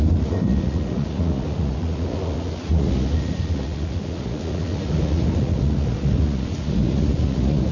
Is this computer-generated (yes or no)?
yes